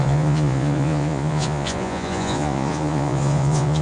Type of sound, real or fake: fake